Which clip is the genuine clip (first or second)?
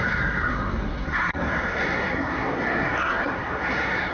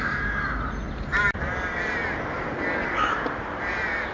second